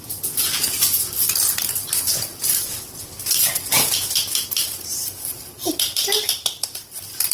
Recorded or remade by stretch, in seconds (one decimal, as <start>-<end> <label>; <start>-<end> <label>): 0.0-2.3 recorded; 2.3-2.8 remade; 2.8-4.9 recorded; 4.9-6.0 remade; 6.0-7.3 recorded